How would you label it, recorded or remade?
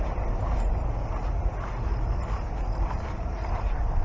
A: remade